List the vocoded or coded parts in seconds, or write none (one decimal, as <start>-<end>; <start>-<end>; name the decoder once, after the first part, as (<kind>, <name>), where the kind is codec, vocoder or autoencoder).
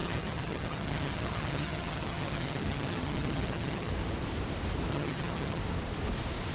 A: 0.0-3.9 (vocoder, HiFi-GAN); 4.9-5.6